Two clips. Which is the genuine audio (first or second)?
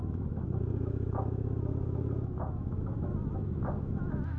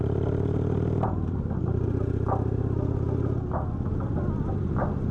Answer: second